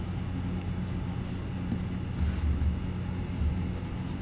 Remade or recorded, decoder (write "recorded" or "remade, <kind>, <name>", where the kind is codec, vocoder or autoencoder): recorded